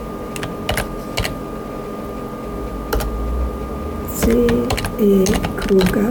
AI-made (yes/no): no